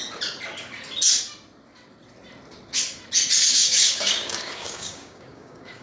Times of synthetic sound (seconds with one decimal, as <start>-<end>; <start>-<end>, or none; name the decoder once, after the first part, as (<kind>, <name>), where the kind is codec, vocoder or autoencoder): 3.5-5.8 (codec, DAC)